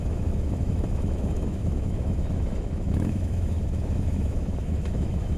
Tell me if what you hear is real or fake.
fake